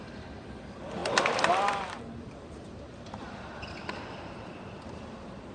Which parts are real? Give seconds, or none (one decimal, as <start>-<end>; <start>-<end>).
none